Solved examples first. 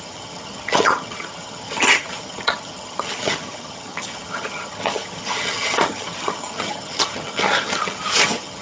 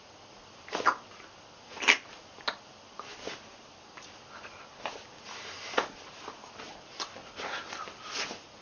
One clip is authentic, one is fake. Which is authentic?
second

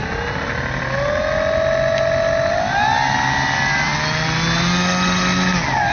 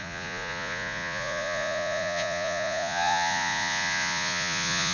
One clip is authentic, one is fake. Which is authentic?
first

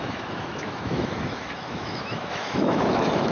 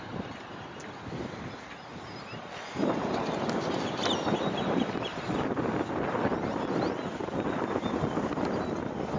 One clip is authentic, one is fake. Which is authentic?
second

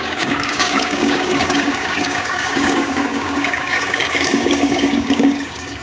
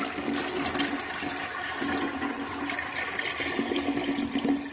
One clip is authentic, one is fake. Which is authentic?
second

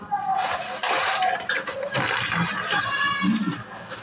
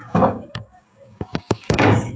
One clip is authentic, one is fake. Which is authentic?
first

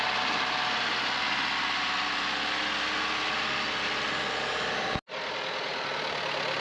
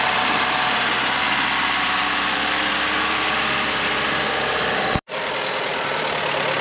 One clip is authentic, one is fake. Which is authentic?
first